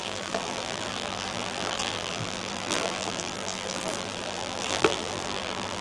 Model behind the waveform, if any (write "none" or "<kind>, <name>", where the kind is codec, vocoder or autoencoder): vocoder, BigVGAN v2